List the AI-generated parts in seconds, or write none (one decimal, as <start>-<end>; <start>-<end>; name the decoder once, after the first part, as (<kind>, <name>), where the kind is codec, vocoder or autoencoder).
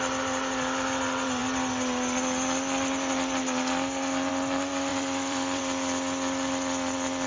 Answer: 4.9-5.6 (vocoder, BigVGAN v2)